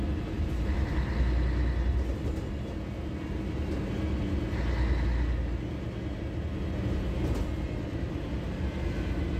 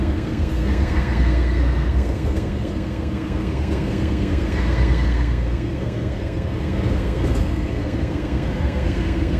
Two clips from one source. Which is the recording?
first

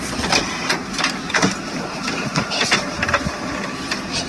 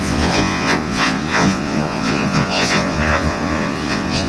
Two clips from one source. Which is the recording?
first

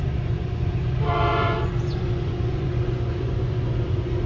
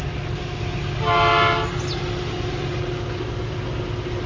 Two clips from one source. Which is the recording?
second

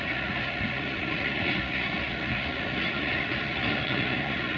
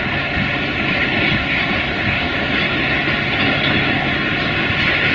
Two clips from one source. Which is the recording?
second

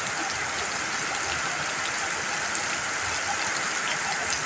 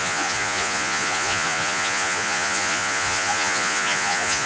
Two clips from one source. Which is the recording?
first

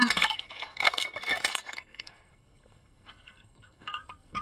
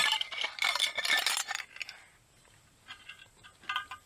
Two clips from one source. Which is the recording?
second